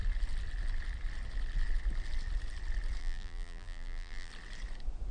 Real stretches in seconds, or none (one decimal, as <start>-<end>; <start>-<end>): 0.0-3.0; 4.3-5.1